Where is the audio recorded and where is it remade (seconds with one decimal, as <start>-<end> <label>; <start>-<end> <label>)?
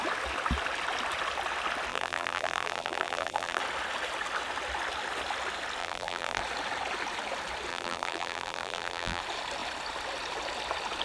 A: 0.0-1.9 recorded; 1.9-3.6 remade; 3.6-5.8 recorded; 5.8-6.4 remade; 6.4-7.7 recorded; 7.7-9.2 remade; 9.2-11.0 recorded